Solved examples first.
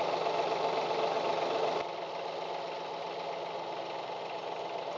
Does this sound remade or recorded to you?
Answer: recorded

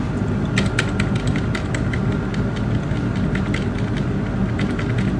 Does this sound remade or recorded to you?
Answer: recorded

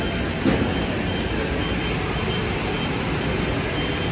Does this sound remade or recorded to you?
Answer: recorded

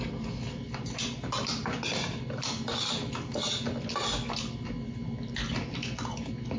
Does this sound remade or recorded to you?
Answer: recorded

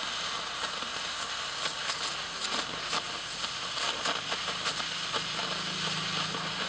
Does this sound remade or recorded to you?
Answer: recorded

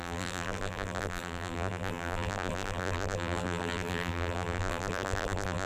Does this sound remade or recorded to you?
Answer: remade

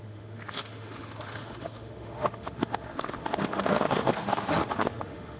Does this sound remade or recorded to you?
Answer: remade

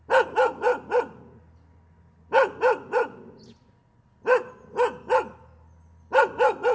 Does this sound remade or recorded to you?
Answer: recorded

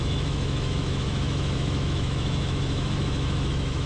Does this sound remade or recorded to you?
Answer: remade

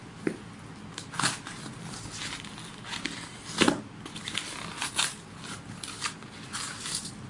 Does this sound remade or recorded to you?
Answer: recorded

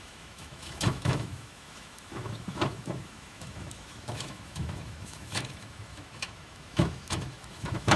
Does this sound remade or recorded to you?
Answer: remade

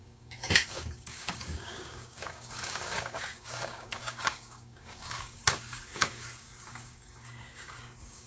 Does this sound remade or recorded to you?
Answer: remade